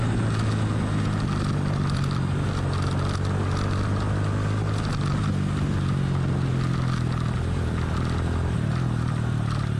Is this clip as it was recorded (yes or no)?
yes